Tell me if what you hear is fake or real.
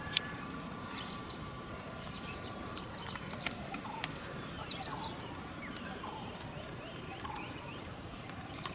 fake